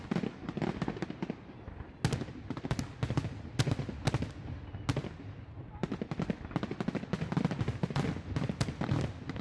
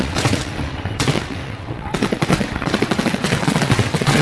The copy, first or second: second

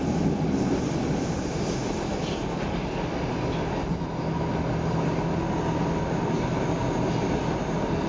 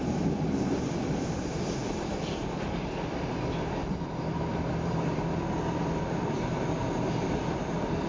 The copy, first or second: second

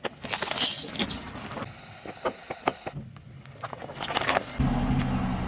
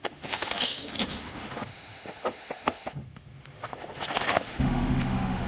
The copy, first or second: second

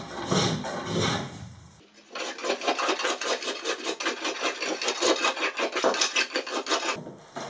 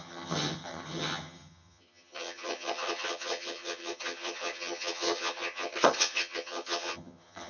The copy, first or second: second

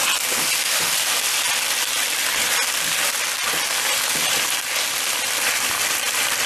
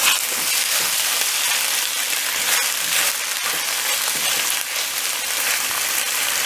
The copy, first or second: first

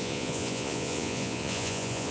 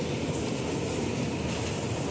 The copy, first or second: first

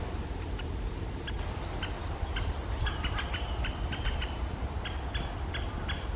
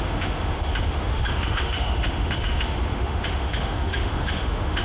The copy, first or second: second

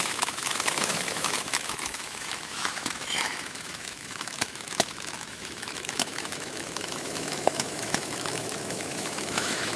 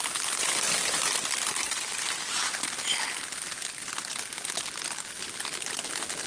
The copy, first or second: first